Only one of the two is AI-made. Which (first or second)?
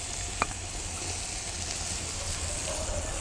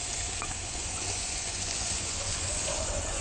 second